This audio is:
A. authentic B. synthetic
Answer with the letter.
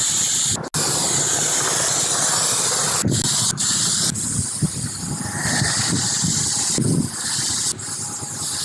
A